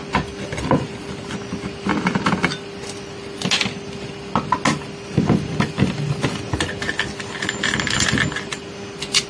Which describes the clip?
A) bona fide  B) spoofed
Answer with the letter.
A